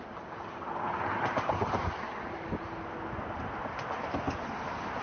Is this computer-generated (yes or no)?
no